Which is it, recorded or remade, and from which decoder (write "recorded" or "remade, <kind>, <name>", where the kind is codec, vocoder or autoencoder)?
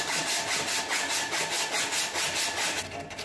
recorded